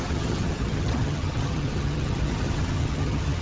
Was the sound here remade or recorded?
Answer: remade